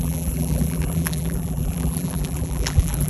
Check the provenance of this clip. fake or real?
fake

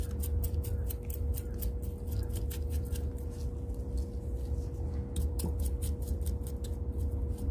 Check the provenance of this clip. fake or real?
real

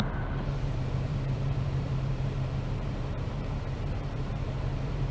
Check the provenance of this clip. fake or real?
fake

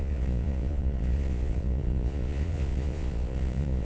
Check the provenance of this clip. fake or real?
fake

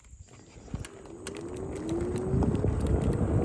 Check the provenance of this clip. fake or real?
real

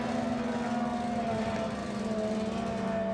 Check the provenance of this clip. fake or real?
real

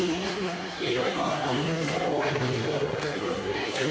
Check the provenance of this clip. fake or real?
fake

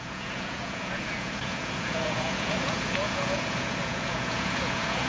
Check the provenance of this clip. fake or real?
fake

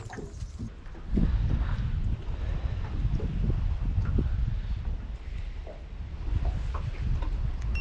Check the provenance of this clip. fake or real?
real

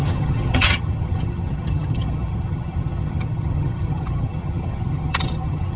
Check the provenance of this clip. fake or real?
fake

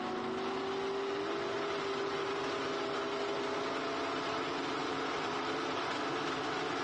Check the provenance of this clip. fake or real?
real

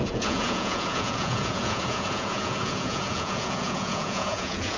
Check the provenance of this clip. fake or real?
fake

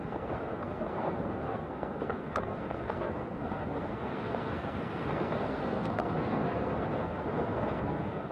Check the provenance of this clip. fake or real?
fake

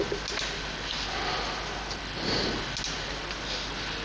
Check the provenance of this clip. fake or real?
real